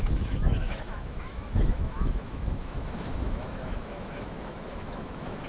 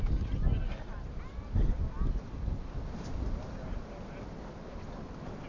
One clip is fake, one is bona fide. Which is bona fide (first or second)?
second